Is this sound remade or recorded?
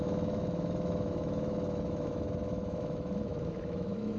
remade